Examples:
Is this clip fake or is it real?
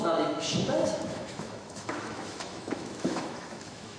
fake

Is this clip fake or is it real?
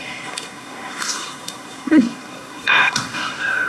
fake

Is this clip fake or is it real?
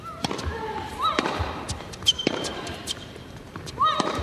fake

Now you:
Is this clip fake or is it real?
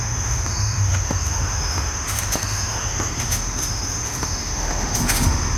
fake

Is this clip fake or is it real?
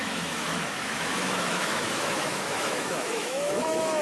fake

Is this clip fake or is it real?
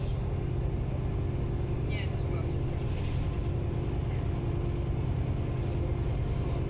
real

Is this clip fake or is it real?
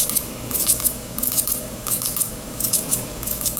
fake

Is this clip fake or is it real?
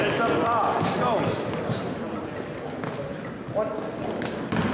real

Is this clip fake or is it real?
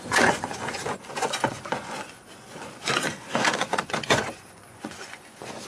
fake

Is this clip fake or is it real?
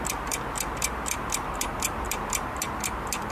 real